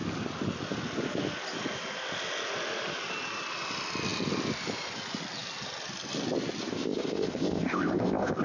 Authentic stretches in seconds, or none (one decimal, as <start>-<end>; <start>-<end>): 0.0-6.7